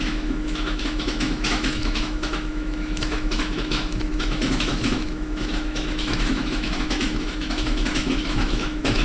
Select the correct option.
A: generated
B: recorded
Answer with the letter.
A